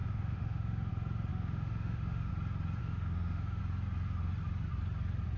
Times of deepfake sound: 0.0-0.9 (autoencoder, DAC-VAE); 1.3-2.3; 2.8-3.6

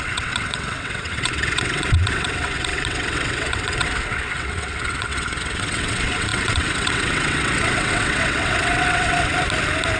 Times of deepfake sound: 0.0-9.3 (vocoder, WaveNeXt)

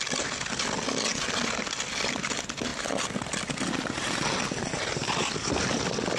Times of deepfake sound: none

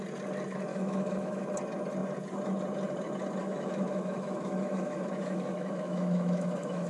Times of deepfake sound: 0.7-1.4 (autoencoder, DAC-VAE); 3.4-6.9

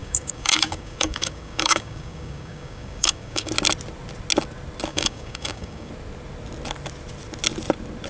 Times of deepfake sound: 0.0-3.5 (codec, DAC); 4.9-5.9

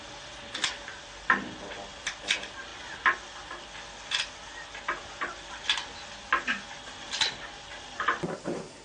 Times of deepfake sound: none

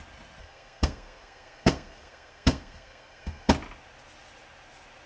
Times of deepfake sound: 0.4-3.5 (codec, SNAC)

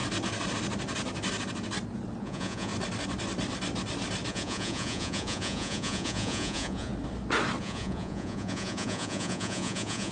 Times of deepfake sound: 2.2-2.7 (vocoder, Vocos); 4.3-6.9; 7.6-10.1